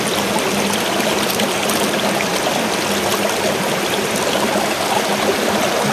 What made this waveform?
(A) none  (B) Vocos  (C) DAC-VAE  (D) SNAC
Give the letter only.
A